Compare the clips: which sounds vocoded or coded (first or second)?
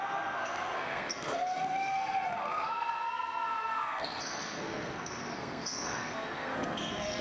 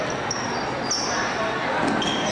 first